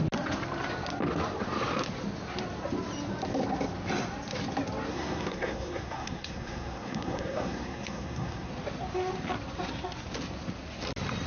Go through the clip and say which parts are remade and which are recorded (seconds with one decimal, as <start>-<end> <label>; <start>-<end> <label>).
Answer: 0.0-4.9 recorded; 4.9-8.5 remade; 8.5-11.3 recorded